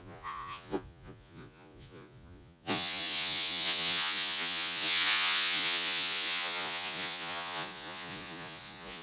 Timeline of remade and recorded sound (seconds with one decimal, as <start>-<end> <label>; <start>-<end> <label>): 0.0-9.0 remade